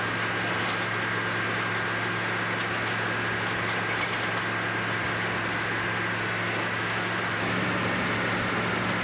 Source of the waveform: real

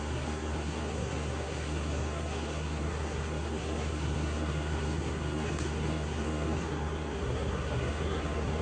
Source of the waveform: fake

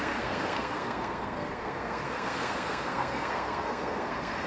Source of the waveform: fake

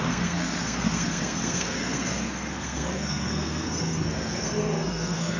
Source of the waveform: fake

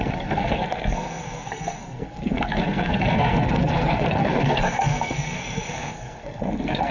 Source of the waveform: fake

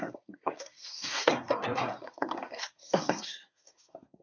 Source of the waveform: fake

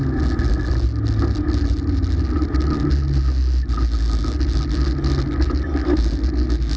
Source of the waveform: real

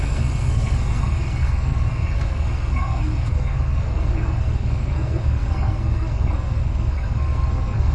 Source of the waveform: fake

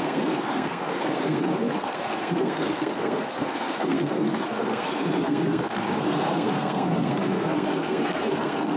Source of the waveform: fake